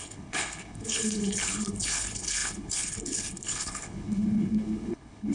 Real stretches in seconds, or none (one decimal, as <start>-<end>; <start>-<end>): none